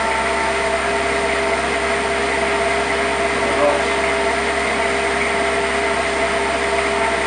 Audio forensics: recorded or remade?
recorded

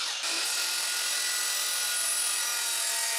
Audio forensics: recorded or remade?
recorded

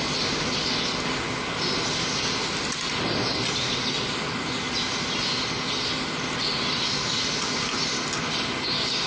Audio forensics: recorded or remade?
recorded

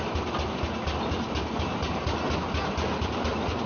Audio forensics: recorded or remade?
recorded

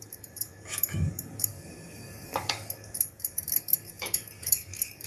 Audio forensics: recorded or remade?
remade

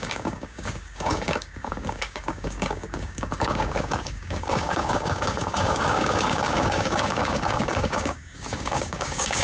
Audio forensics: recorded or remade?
remade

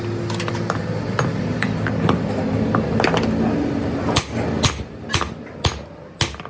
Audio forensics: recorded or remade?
recorded